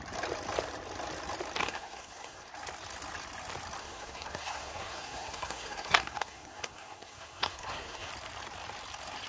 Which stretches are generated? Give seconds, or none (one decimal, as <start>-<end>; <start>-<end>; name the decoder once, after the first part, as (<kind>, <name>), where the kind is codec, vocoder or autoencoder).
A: 1.6-2.5 (codec, SNAC); 3.8-8.1